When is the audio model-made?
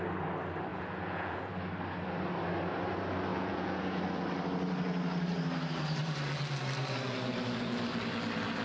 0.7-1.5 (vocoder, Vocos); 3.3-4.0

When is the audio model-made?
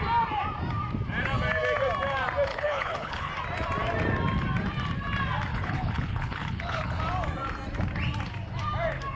2.5-3.3 (codec, HILCodec); 5.5-7.0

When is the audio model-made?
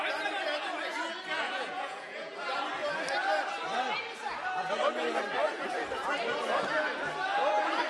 1.4-2.3 (vocoder, Vocos)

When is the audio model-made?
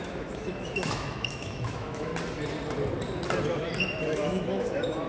0.0-2.1 (autoencoder, DAC-VAE); 4.0-5.1